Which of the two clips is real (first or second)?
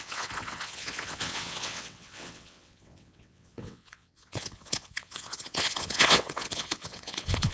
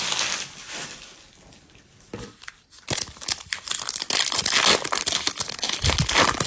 second